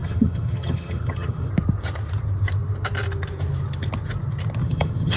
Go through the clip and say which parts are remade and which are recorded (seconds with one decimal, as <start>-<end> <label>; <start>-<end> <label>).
0.0-1.5 remade; 1.5-4.6 recorded; 4.6-5.2 remade